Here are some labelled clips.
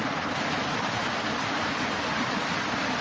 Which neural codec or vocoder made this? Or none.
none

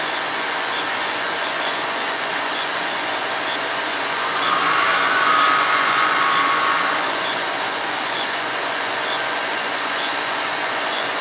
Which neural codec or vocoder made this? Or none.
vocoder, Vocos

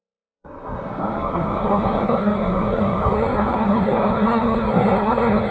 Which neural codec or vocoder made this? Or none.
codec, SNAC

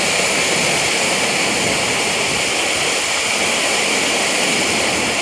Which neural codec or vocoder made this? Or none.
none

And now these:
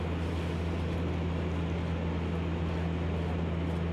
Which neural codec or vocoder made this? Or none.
none